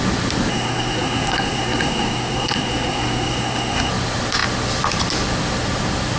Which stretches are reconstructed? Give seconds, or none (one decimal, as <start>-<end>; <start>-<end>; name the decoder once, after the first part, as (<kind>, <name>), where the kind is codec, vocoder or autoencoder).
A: 0.5-3.9 (codec, SNAC)